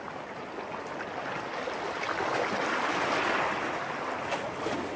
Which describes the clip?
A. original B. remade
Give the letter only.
A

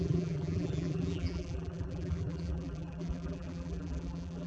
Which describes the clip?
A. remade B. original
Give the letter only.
A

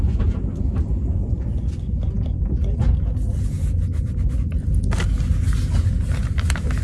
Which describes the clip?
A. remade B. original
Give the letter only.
B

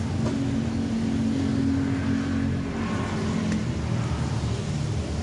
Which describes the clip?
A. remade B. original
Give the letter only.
B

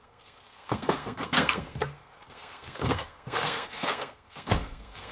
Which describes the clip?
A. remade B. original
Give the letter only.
A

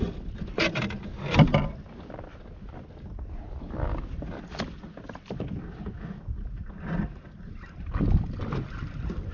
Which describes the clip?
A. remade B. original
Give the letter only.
B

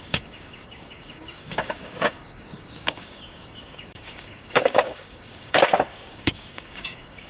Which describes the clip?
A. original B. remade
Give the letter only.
B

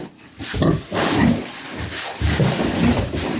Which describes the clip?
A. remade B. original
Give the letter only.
A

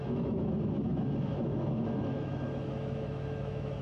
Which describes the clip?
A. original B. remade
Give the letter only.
B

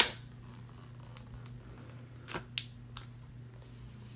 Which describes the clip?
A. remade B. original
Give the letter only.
B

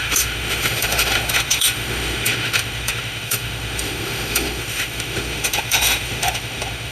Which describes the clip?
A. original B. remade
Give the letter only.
B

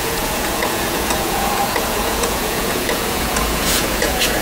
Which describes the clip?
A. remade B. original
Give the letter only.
A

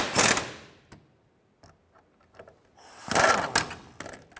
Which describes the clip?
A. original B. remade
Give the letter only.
A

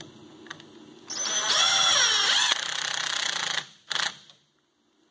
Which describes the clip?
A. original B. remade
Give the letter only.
A